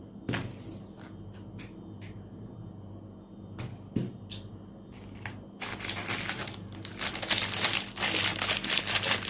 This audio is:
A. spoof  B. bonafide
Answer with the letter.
B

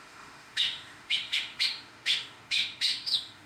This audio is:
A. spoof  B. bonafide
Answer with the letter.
A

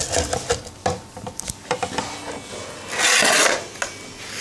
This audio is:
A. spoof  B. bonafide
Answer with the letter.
B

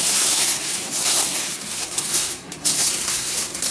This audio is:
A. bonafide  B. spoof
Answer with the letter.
B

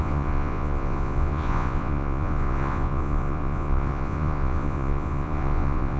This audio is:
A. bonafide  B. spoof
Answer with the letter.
B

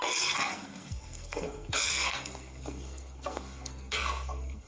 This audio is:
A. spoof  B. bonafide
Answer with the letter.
A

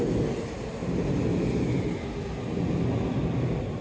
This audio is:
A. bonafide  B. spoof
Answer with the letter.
A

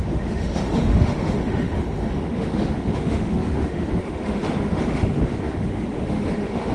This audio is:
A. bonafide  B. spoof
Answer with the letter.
B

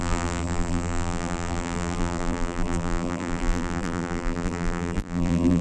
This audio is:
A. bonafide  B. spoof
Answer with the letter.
B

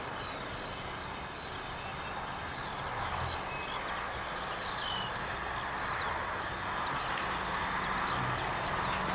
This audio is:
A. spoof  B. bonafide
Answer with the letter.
B